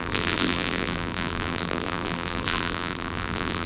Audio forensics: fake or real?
fake